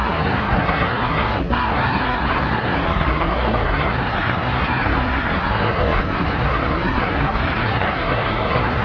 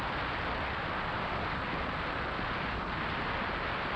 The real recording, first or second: second